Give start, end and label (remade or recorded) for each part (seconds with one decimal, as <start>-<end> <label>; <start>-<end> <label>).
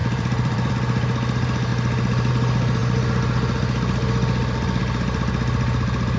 0.0-0.7 remade; 0.7-6.2 recorded